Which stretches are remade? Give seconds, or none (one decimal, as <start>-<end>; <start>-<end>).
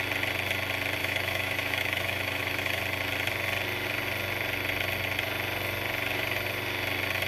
1.0-2.8